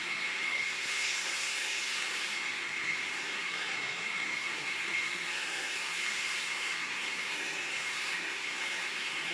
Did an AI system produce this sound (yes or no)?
yes